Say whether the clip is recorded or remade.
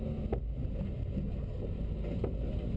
recorded